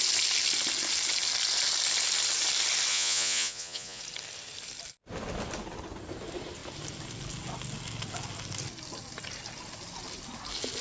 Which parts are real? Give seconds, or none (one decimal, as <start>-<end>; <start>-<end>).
0.0-2.9; 4.0-10.8